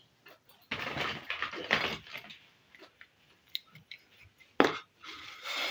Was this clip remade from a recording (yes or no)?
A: no